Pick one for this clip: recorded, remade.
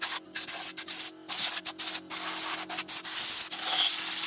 recorded